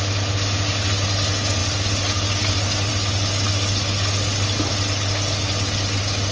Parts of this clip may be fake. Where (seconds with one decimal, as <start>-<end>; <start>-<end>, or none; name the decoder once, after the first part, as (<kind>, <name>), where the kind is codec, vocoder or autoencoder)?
none